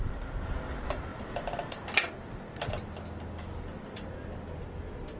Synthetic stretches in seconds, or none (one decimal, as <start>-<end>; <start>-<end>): none